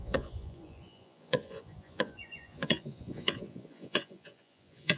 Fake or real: fake